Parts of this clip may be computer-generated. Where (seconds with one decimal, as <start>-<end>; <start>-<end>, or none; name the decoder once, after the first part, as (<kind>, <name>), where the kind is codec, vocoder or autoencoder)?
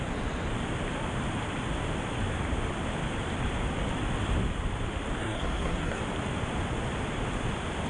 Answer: 5.2-6.0 (codec, SNAC)